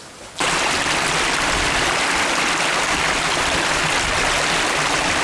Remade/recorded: recorded